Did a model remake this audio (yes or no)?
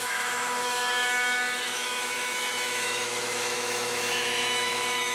yes